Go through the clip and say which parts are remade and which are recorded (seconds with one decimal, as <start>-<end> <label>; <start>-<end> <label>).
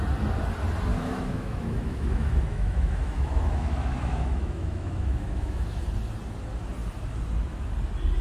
0.0-0.9 recorded; 0.9-5.8 remade; 5.8-8.2 recorded